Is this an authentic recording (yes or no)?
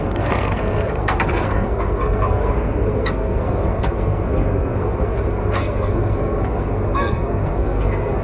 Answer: no